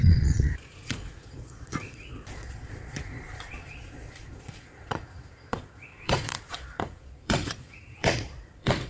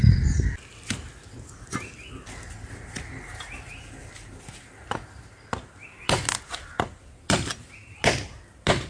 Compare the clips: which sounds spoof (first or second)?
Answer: first